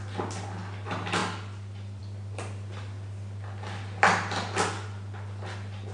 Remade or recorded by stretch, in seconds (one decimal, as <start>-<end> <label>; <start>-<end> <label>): 0.0-5.9 recorded